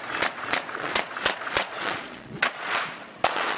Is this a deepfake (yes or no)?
yes